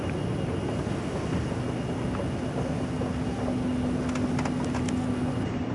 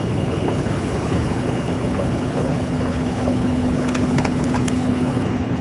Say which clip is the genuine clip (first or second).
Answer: first